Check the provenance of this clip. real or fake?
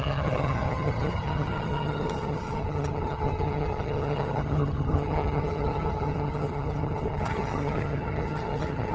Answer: fake